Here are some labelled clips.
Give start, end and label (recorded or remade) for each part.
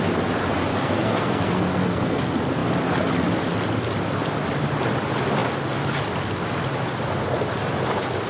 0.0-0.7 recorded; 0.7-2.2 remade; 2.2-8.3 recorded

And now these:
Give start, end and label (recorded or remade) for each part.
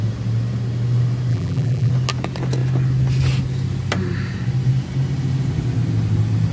0.0-1.3 recorded; 1.3-1.9 remade; 1.9-6.5 recorded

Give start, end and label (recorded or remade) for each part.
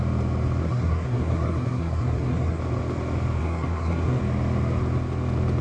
0.0-0.6 recorded; 0.6-2.6 remade; 2.6-3.4 recorded; 3.4-4.2 remade; 4.2-5.6 recorded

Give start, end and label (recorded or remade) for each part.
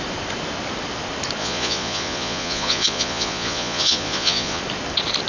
0.0-1.4 recorded; 1.4-4.6 remade; 4.6-5.3 recorded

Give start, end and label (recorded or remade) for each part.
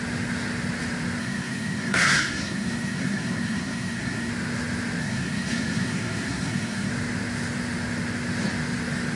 0.0-1.2 recorded; 1.2-4.3 remade; 4.3-5.0 recorded; 5.0-6.9 remade; 6.9-9.2 recorded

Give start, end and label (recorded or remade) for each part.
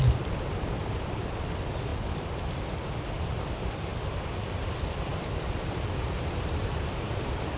0.0-3.9 remade; 3.9-4.6 recorded; 4.6-5.1 remade; 5.1-6.9 recorded; 6.9-7.6 remade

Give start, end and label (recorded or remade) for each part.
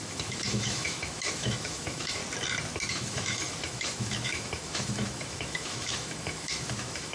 0.0-2.2 remade; 2.2-2.9 recorded; 2.9-7.1 remade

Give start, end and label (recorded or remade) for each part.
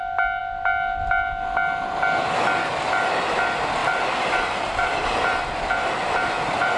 0.0-3.8 recorded; 3.8-6.8 remade